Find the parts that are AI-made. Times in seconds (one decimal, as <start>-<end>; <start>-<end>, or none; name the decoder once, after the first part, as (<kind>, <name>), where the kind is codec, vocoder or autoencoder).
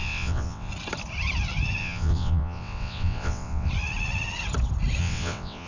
0.0-0.7 (vocoder, WaveNeXt); 1.8-3.7; 5.0-5.7